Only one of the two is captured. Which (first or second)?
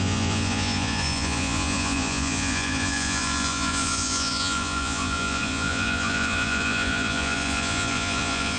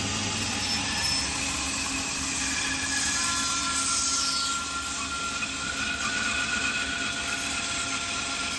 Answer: second